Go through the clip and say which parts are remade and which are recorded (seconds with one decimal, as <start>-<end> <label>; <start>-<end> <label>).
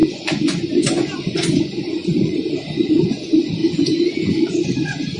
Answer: 0.0-5.2 remade